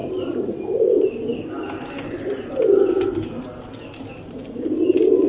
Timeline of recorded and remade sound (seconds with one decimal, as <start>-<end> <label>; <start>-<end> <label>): 0.0-5.3 recorded